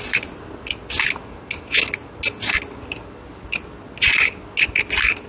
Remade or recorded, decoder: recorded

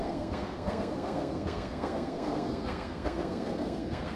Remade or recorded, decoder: remade, codec, SNAC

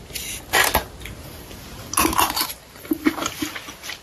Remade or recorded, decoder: recorded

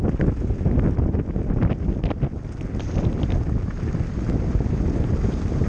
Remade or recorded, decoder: recorded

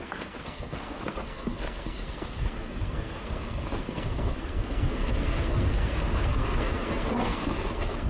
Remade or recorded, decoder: remade, codec, SNAC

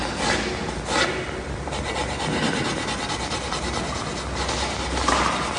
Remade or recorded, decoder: recorded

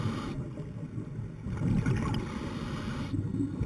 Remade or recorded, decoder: recorded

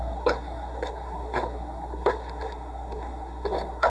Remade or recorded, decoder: remade, codec, SNAC